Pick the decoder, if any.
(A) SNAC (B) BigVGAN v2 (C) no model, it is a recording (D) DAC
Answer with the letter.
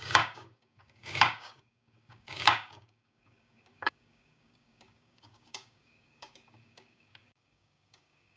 D